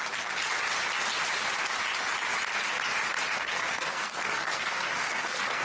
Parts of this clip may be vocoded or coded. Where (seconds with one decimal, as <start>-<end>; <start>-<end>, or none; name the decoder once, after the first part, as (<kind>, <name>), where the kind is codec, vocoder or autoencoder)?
3.4-5.6 (codec, SNAC)